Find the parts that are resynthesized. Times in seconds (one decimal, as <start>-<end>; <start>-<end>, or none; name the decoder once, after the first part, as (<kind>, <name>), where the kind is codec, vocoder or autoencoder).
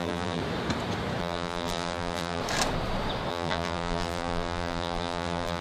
0.0-0.4 (vocoder, BigVGAN v2); 1.2-2.4; 3.3-5.6